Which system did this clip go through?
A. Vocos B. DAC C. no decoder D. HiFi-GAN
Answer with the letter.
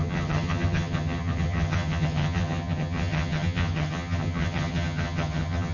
D